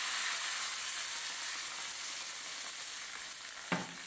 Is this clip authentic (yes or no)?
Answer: yes